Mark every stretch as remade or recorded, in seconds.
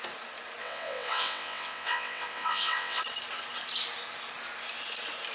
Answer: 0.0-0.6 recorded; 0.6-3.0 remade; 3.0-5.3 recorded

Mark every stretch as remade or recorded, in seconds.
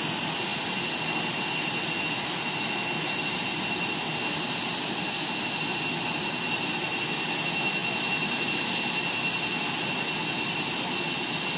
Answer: 0.0-11.6 recorded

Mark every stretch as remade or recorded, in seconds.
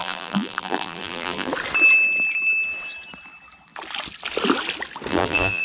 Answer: 0.0-1.5 remade; 1.5-5.1 recorded; 5.1-5.6 remade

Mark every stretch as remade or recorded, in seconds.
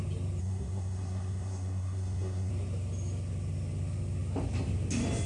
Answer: 0.0-0.4 recorded; 0.4-2.5 remade; 2.5-5.3 recorded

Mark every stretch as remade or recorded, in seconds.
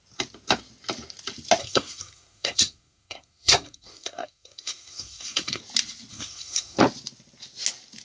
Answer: 0.0-1.6 recorded; 1.6-5.6 remade; 5.6-6.1 recorded; 6.1-6.8 remade; 6.8-8.0 recorded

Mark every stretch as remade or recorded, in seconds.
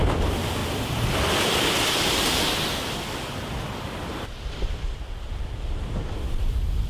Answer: 0.0-4.1 recorded; 4.1-5.9 remade; 5.9-6.9 recorded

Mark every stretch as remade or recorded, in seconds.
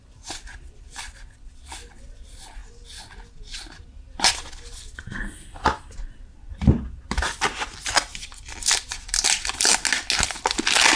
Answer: 0.0-11.0 recorded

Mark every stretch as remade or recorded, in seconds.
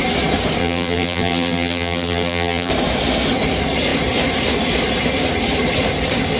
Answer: 0.0-0.6 recorded; 0.6-2.7 remade; 2.7-6.4 recorded